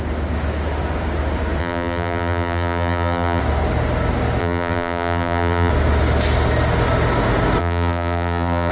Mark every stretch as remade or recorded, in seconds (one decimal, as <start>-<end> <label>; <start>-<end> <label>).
0.0-1.6 recorded; 1.6-3.4 remade; 3.4-4.4 recorded; 4.4-5.7 remade; 5.7-7.6 recorded; 7.6-8.7 remade